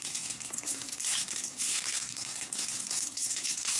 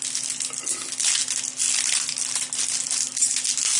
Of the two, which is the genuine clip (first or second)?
second